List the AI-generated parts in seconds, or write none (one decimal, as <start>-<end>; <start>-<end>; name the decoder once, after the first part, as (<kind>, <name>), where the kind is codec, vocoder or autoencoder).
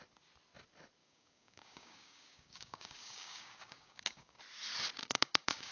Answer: 1.0-4.4 (codec, DAC); 5.0-5.7